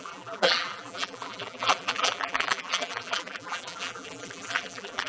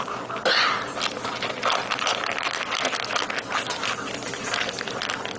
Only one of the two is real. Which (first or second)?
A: second